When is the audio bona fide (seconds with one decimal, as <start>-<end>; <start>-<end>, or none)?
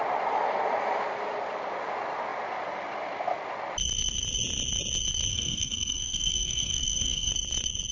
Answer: 0.0-5.3; 7.3-7.9